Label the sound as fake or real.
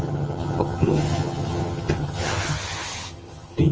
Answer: fake